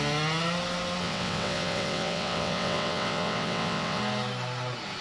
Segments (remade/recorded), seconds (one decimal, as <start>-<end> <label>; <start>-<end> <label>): 0.0-1.0 recorded; 1.0-4.0 remade; 4.0-5.0 recorded

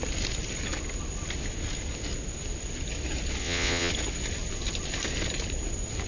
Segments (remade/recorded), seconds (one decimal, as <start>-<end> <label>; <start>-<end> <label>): 0.0-3.4 recorded; 3.4-3.9 remade; 3.9-6.1 recorded

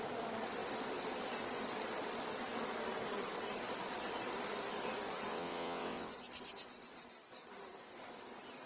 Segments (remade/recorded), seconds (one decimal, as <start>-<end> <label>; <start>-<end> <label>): 0.0-5.3 recorded; 5.3-6.1 remade; 6.1-8.7 recorded

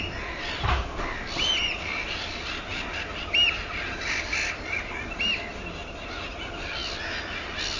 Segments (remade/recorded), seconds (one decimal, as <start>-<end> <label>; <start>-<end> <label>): 0.0-7.8 recorded

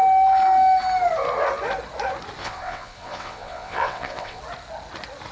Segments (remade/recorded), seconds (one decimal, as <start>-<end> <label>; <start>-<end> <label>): 0.0-2.4 recorded; 2.4-4.4 remade; 4.4-5.3 recorded

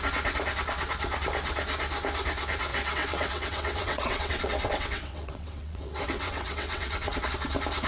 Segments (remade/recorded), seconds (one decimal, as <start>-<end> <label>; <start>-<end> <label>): 0.0-2.7 recorded; 2.7-7.3 remade; 7.3-7.9 recorded